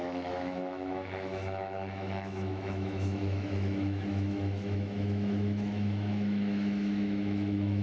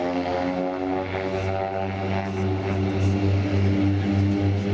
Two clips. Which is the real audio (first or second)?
second